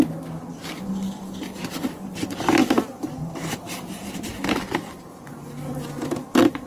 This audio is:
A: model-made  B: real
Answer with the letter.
B